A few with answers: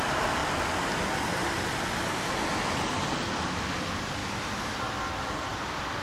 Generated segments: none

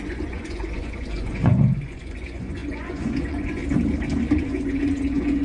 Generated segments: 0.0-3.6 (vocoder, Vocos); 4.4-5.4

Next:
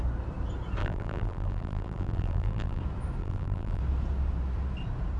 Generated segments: 0.8-2.8 (vocoder, BigVGAN v2); 3.2-3.8

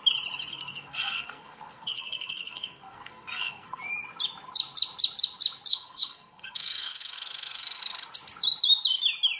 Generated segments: 0.5-3.8 (codec, SNAC); 5.7-7.8

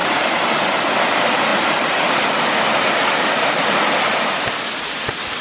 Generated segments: none

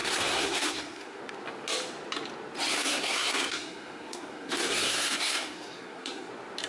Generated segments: 0.0-1.2 (codec, SNAC); 2.7-6.3

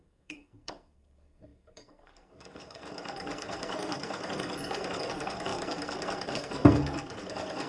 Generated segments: 0.0-7.7 (codec, SNAC)